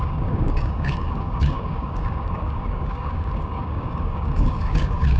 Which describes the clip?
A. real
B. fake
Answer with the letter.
B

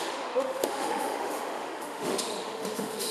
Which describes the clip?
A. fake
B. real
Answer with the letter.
A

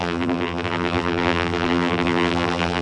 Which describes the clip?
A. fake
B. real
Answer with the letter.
A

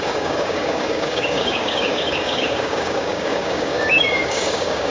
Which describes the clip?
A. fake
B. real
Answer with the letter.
A